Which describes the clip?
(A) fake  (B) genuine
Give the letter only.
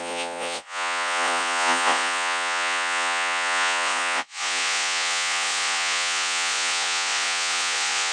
A